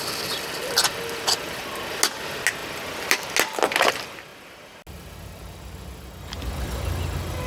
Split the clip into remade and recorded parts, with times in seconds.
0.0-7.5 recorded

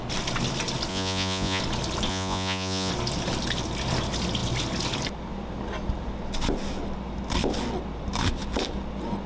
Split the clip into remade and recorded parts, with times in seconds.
0.0-0.9 recorded; 0.9-1.6 remade; 1.6-2.1 recorded; 2.1-2.9 remade; 2.9-9.3 recorded

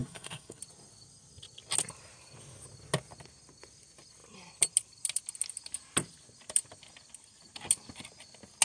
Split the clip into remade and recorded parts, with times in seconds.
0.0-0.6 remade; 0.6-8.6 recorded

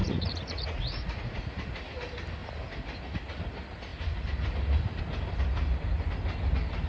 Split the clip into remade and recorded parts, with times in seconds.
0.0-1.5 remade; 1.5-6.9 recorded